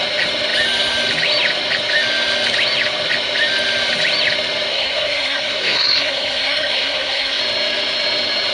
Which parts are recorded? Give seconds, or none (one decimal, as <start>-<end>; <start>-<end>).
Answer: 0.0-4.7; 7.4-8.5